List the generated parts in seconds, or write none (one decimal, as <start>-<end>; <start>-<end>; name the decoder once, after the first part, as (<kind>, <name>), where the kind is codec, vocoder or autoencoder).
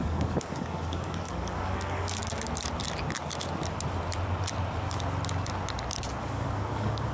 0.0-2.2 (codec, DAC); 6.2-7.1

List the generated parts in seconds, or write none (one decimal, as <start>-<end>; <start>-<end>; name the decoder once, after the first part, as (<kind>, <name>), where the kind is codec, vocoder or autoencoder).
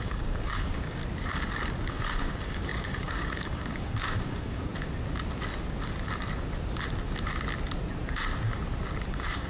0.0-1.0 (codec, DAC); 1.9-4.7; 9.1-9.5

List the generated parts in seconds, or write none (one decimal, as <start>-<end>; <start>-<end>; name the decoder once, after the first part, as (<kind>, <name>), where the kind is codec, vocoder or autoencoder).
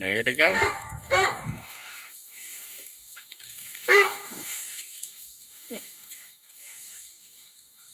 0.0-7.9 (codec, DAC)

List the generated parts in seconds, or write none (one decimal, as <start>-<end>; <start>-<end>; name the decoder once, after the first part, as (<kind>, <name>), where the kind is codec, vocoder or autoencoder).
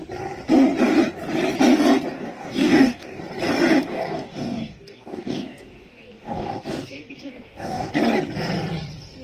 2.1-3.2 (codec, DAC); 3.9-7.9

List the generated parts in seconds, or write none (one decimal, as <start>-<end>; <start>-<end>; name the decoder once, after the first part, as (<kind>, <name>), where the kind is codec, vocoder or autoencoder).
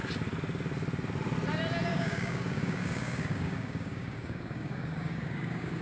1.9-5.8 (codec, DAC)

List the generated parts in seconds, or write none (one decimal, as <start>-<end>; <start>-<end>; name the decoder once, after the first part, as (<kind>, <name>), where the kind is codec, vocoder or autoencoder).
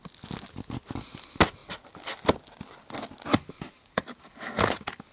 3.3-5.1 (codec, DAC)